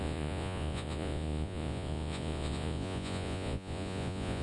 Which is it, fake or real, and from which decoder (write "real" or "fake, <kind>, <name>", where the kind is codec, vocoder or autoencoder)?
fake, vocoder, Vocos